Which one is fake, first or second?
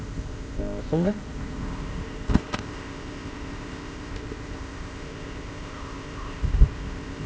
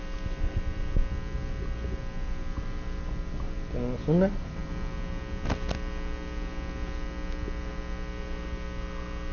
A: first